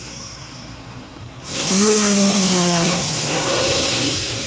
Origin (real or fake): fake